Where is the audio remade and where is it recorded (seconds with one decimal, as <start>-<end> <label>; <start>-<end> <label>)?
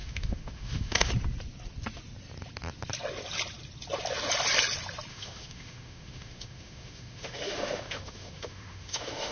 0.0-1.1 remade; 1.1-5.1 recorded; 5.1-9.3 remade